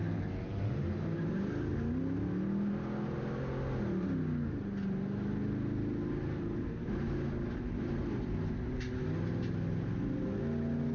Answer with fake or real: real